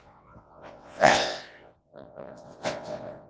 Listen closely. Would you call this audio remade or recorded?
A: remade